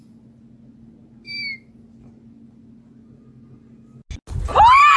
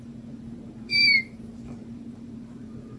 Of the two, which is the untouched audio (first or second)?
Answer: first